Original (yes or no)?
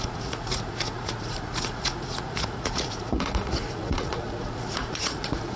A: no